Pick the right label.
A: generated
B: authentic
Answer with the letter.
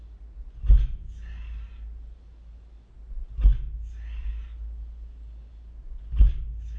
B